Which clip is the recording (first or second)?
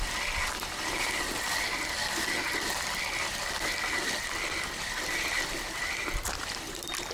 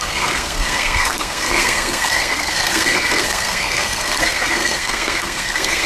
first